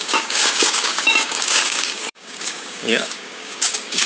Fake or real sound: fake